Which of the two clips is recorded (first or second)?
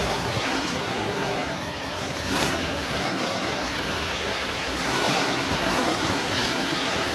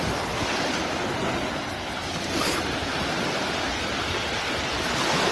second